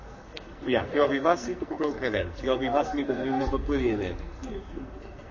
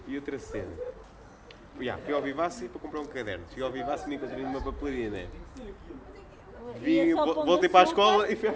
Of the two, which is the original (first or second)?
second